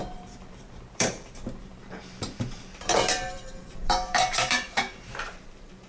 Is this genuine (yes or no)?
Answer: no